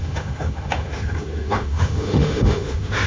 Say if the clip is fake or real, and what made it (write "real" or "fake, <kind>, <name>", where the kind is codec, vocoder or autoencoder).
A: fake, autoencoder, DAC-VAE